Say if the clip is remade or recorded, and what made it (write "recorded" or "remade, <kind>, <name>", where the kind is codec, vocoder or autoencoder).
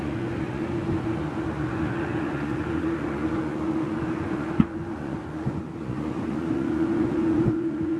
remade, vocoder, Vocos